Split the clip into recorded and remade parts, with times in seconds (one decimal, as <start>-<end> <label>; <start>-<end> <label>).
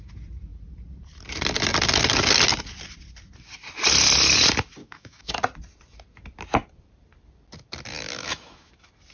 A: 0.0-4.8 recorded; 4.8-5.3 remade; 5.3-7.9 recorded; 7.9-8.7 remade; 8.7-9.1 recorded